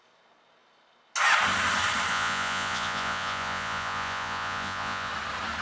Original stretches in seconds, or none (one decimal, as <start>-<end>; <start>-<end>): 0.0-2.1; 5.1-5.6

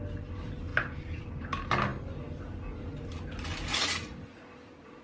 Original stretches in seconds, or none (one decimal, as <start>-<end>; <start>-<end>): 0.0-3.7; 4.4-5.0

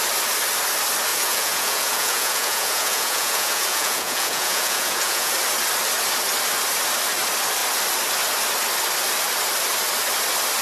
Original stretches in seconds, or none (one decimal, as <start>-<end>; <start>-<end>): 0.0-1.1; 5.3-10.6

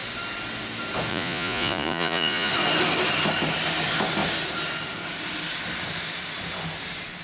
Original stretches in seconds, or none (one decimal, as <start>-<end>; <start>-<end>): 0.0-1.1; 2.5-7.2

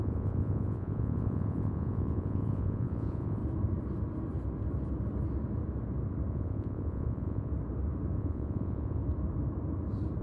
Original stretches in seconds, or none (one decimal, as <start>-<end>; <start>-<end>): 3.4-6.3; 7.5-8.2; 9.0-10.2